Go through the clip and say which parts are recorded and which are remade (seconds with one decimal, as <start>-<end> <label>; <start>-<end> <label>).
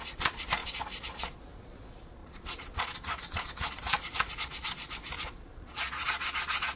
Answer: 0.0-6.8 remade